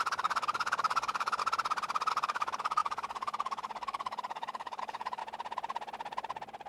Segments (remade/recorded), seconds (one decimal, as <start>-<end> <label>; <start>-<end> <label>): 0.0-1.4 remade; 1.4-2.1 recorded; 2.1-5.2 remade; 5.2-6.7 recorded